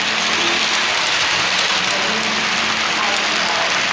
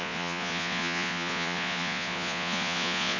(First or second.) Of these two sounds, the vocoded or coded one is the second